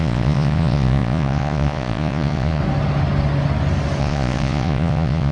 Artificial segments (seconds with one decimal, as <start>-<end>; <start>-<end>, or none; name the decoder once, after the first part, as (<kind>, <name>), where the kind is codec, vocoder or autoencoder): 0.0-2.6 (vocoder, Vocos); 4.0-5.3